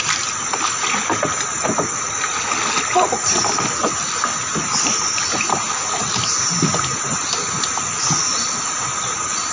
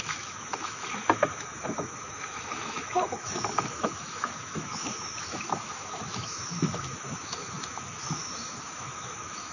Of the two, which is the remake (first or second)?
second